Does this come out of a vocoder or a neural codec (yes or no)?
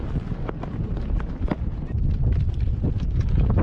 no